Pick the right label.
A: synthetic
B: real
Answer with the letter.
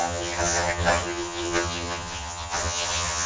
A